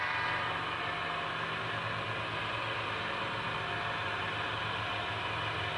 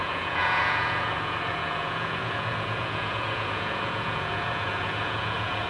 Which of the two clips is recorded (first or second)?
first